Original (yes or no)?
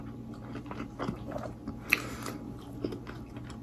yes